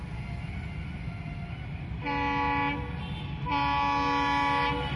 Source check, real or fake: real